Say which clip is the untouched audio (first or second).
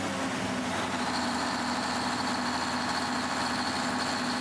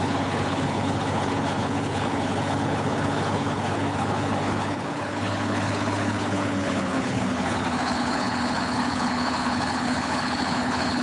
first